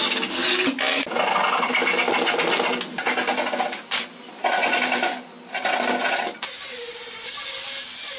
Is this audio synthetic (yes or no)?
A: no